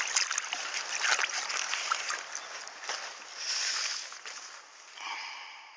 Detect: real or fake real